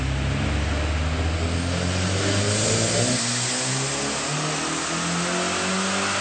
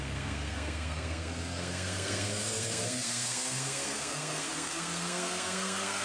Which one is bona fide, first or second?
first